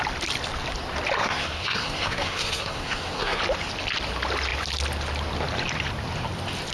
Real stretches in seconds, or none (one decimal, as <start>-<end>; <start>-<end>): 0.0-1.2; 3.4-6.7